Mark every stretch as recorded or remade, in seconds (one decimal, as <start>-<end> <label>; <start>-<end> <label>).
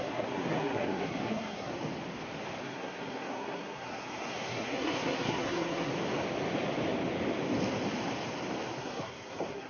0.0-1.7 remade; 1.7-2.6 recorded; 2.6-5.9 remade; 5.9-8.8 recorded; 8.8-9.7 remade